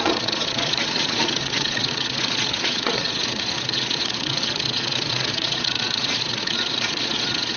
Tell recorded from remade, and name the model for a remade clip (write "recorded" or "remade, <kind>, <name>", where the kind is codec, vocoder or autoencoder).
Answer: remade, vocoder, Vocos